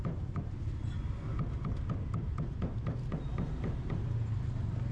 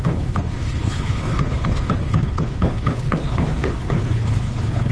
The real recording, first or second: first